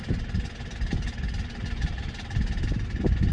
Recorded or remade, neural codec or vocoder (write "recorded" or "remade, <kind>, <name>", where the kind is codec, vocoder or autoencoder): recorded